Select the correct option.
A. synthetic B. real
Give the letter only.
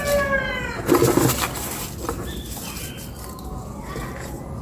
B